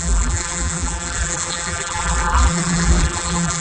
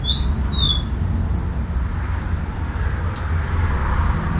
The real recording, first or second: second